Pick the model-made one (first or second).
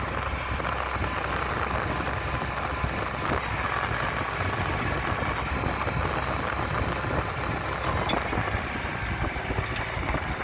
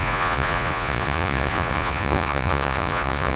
second